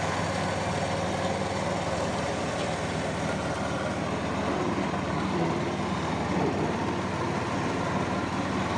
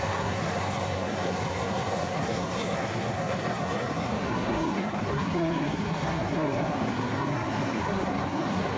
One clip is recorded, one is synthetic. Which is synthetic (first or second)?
second